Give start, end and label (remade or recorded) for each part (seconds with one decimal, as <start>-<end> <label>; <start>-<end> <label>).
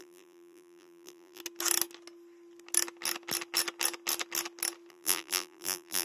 0.0-1.4 remade; 1.4-4.9 recorded; 4.9-6.0 remade